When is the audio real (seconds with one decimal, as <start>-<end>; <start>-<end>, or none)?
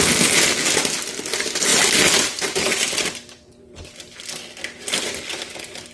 0.0-5.9